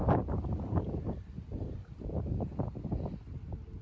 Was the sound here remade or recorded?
remade